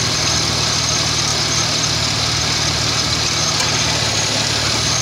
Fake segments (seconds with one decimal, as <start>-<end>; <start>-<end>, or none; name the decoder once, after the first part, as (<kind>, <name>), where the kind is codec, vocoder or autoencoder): none